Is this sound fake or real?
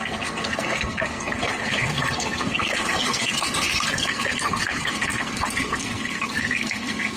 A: fake